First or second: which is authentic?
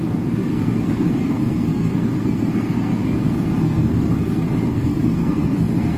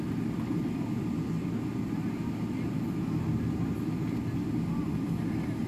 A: second